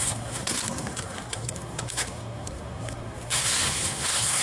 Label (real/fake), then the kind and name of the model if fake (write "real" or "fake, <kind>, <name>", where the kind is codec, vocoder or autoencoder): fake, codec, SNAC